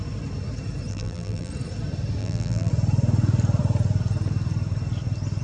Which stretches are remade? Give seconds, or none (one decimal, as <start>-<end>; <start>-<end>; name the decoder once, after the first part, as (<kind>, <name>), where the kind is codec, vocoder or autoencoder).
0.9-1.5 (vocoder, BigVGAN v2); 2.2-2.7